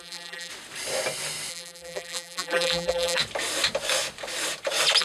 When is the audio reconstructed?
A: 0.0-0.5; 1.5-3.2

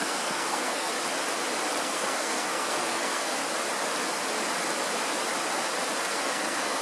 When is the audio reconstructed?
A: 0.0-0.9; 1.8-3.4; 6.1-6.8

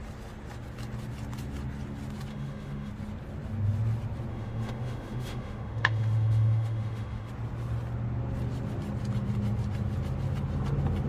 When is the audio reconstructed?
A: 2.3-2.9; 4.3-7.3

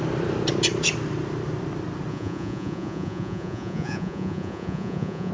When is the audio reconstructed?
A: 2.1-5.3